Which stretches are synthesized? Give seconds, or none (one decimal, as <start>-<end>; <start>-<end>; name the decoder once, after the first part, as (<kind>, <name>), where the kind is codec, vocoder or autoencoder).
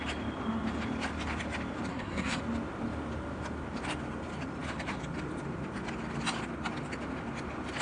1.9-2.4 (codec, SNAC)